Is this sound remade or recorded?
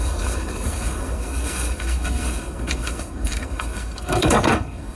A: remade